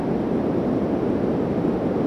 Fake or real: real